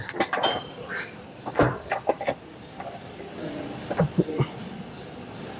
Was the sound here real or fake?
real